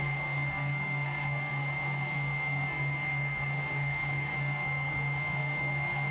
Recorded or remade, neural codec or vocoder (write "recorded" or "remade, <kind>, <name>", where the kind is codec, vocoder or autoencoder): remade, codec, SNAC